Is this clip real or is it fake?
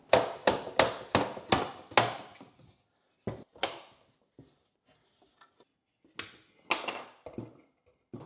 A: real